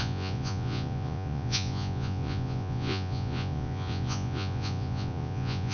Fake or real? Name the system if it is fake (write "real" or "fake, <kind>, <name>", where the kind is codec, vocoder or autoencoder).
fake, vocoder, Vocos